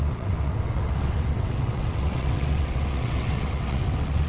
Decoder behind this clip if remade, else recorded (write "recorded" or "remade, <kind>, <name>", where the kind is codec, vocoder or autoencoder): remade, vocoder, WaveNeXt